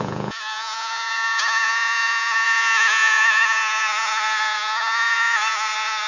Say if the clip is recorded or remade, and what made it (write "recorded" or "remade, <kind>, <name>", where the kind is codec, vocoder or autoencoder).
remade, vocoder, Vocos